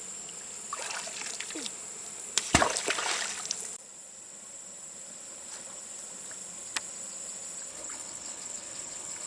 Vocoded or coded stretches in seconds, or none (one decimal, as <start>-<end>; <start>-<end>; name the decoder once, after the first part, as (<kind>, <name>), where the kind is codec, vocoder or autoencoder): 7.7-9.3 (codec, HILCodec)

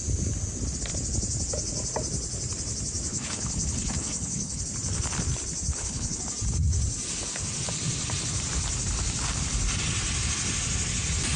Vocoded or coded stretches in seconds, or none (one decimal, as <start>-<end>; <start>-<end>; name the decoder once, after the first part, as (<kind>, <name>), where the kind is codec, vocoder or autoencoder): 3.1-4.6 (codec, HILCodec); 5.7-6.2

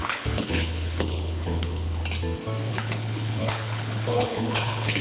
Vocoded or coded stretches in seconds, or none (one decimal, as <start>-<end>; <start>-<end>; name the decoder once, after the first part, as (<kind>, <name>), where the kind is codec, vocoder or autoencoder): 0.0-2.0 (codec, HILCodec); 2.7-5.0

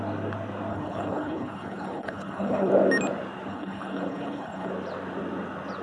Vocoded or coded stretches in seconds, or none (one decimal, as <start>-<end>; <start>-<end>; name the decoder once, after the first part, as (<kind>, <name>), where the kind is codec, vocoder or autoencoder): 0.7-2.7 (codec, HILCodec); 3.5-4.7

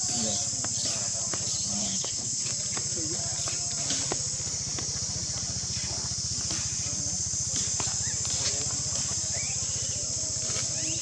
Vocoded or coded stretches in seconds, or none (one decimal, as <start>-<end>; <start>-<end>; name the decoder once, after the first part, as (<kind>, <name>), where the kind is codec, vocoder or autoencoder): 1.8-2.4 (codec, HILCodec)

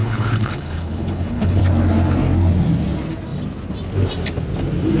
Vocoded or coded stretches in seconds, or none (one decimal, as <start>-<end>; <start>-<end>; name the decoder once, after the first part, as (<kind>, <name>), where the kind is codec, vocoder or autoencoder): 0.0-1.6 (codec, HILCodec)

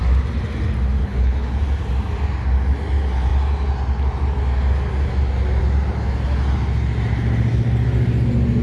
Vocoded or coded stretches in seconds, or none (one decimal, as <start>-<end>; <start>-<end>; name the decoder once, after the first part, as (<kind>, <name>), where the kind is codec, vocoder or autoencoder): 1.0-1.6 (codec, HILCodec)

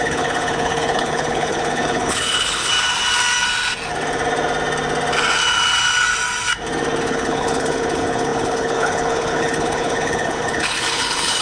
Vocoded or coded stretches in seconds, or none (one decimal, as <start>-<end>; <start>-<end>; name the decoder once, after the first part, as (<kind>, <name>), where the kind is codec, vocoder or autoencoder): 0.0-2.7 (codec, HILCodec); 7.0-11.4